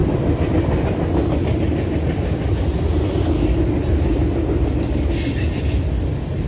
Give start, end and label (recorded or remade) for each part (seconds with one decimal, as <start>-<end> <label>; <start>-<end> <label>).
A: 0.0-6.5 recorded